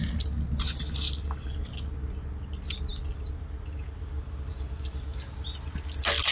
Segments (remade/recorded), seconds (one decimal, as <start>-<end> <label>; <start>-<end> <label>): 0.0-6.3 recorded